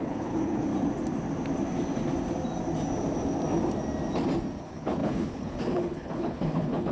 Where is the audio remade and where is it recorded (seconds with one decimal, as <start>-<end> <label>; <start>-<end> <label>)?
0.0-0.7 remade; 0.7-4.6 recorded; 4.6-6.9 remade